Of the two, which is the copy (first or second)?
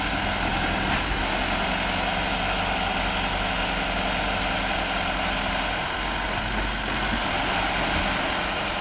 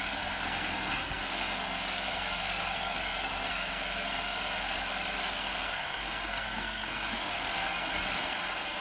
second